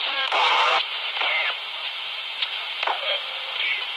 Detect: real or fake fake